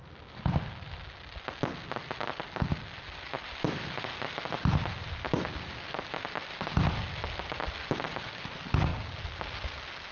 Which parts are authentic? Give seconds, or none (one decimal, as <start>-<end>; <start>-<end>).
0.0-10.1